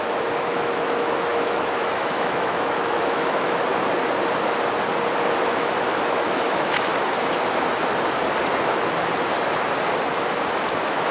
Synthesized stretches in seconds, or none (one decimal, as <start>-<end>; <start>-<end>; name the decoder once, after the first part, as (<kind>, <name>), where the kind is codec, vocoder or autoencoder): 0.0-3.7 (autoencoder, DAC-VAE); 5.4-6.9; 10.7-11.1